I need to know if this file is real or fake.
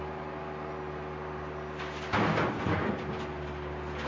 real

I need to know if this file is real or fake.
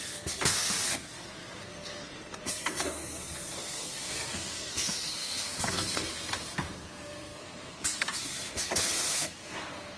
fake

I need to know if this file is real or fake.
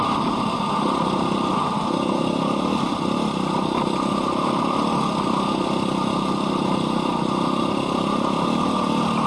real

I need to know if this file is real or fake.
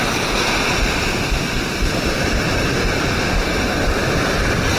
real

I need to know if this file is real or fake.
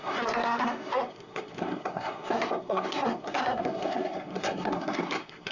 fake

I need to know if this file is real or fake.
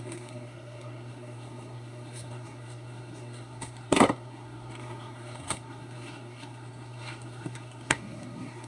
fake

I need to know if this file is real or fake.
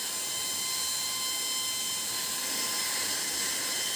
real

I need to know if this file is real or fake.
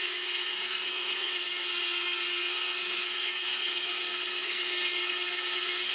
fake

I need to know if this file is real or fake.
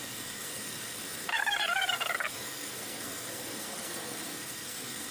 fake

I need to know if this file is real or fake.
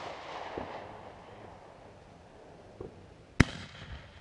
real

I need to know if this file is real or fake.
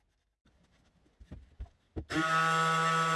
real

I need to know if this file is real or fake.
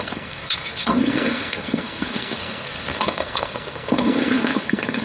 fake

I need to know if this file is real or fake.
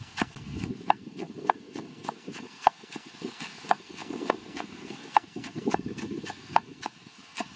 fake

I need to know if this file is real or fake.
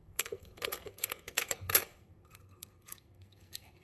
fake